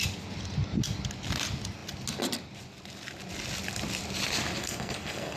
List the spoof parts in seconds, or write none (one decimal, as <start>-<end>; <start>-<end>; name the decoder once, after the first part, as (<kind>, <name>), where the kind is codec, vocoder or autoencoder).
4.6-5.4 (codec, SNAC)